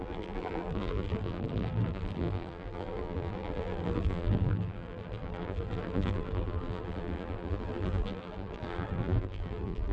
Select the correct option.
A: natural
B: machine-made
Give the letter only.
B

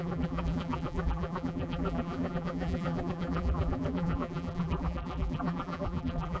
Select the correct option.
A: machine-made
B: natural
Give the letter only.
A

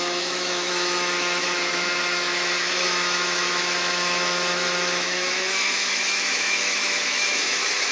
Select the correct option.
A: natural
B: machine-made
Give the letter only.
B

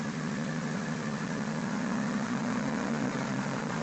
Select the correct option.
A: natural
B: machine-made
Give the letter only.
B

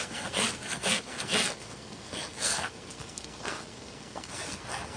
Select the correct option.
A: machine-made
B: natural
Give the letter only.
A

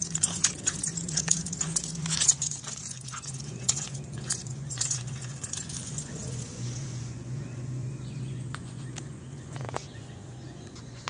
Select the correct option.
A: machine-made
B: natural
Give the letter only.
A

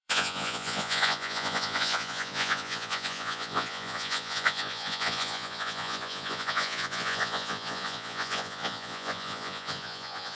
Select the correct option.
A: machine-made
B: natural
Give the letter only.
A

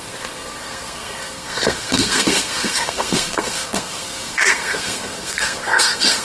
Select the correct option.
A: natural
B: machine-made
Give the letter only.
B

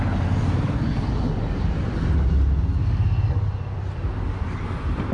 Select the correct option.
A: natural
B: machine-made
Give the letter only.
A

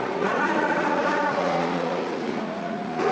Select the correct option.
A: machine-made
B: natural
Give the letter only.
A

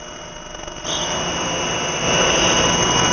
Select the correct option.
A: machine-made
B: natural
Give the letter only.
B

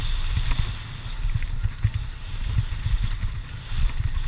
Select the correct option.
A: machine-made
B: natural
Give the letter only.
B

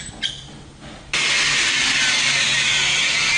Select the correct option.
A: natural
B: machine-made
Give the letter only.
A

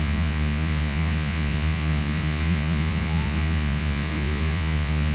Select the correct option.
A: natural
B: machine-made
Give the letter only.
B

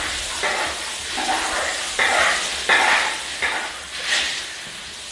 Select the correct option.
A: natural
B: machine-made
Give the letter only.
A